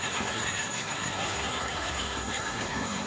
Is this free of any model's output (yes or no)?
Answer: no